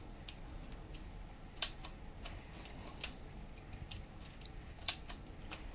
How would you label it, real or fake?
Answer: real